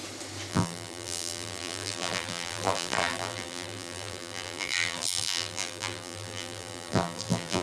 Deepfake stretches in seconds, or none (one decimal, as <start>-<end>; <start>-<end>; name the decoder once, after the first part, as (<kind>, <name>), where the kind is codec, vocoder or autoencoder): 0.5-7.6 (vocoder, BigVGAN v2)